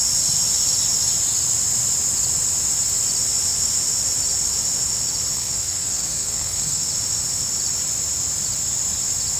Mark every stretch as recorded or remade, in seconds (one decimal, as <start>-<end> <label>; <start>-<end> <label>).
0.0-5.3 recorded; 5.3-6.9 remade; 6.9-9.4 recorded